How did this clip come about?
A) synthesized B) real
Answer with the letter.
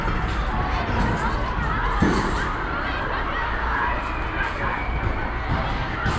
B